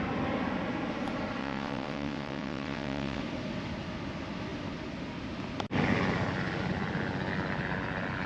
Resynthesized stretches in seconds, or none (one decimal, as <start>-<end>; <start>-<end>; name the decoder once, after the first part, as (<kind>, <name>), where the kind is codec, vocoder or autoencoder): 1.4-3.2 (vocoder, WaveNeXt)